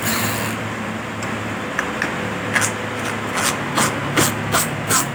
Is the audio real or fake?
real